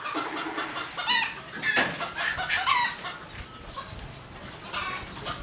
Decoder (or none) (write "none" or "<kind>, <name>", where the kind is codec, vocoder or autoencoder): none